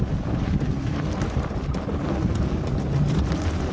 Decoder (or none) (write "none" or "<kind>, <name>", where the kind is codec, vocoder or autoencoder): none